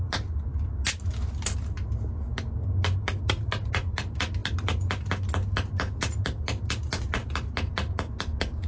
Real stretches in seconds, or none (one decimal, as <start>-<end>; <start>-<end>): 0.0-8.7